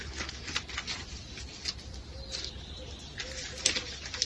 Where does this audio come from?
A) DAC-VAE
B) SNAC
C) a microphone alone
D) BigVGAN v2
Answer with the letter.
C